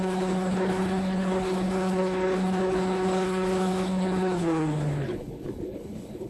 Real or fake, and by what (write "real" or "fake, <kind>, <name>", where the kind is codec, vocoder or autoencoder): fake, codec, HILCodec